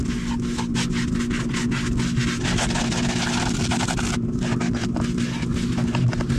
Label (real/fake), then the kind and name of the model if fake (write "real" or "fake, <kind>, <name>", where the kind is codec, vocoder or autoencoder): real